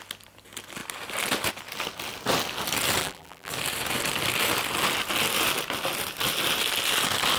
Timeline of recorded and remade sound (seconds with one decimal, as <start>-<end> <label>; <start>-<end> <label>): 0.0-3.0 recorded; 3.0-3.5 remade; 3.5-7.4 recorded